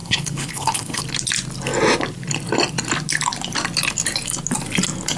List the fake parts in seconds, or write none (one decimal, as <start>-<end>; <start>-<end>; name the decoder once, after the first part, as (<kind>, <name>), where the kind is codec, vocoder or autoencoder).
0.0-1.0 (codec, HILCodec)